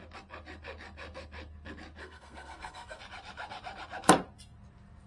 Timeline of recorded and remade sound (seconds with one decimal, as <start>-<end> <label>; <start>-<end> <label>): 0.0-2.0 recorded; 2.0-3.0 remade; 3.0-5.1 recorded